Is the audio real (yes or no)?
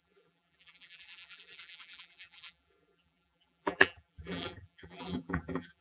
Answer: no